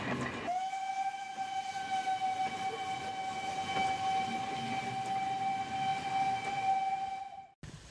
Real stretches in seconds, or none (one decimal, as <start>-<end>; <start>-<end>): 0.0-7.9